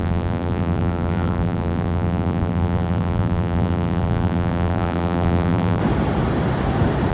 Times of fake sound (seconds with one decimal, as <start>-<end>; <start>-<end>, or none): 0.0-5.8